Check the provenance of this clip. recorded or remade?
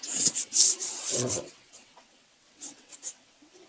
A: remade